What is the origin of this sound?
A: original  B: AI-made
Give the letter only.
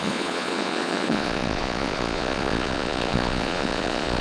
B